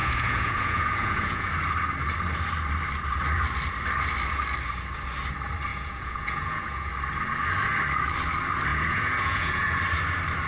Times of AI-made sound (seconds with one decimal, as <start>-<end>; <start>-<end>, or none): 0.0-1.5; 5.7-6.9; 8.7-9.7